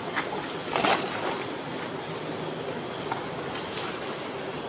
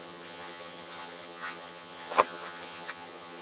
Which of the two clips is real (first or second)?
first